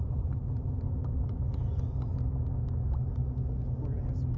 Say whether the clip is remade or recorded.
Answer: recorded